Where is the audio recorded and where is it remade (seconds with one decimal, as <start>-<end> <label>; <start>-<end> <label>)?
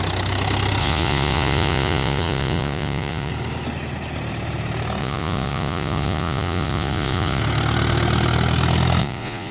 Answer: 0.0-0.8 recorded; 0.8-3.3 remade; 3.3-5.0 recorded; 5.0-7.4 remade; 7.4-9.0 recorded; 9.0-9.5 remade